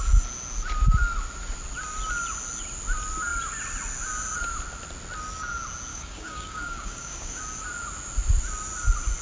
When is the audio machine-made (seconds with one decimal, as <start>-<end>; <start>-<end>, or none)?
5.9-7.4

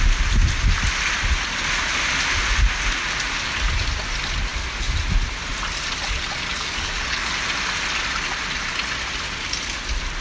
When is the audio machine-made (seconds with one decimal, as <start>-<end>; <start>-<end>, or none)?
6.4-7.3

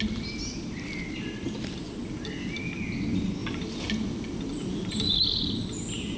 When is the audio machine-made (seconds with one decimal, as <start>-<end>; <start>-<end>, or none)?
none

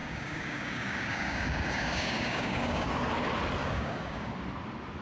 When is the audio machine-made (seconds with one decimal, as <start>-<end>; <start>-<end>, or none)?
0.0-2.9; 3.6-4.3

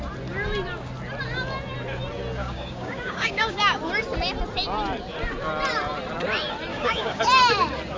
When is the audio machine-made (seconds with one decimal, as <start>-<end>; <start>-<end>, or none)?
2.4-3.6; 6.7-7.2

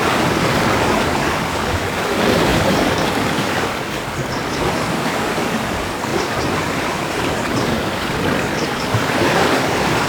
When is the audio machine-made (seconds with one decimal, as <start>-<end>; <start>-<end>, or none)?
0.0-10.1

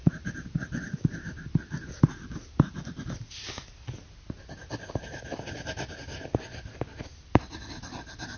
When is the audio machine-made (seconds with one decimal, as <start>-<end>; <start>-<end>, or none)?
none